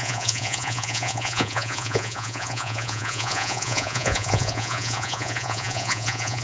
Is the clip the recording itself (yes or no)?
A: no